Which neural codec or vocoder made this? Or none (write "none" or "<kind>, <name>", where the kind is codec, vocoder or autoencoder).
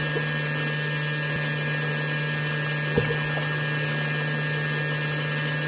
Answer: none